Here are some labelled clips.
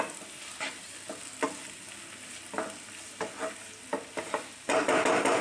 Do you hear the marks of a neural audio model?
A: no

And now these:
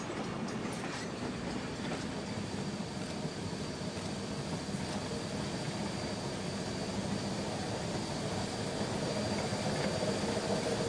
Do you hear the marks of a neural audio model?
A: no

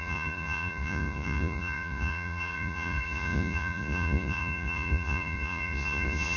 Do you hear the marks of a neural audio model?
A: yes